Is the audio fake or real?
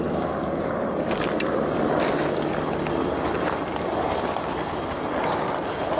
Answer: real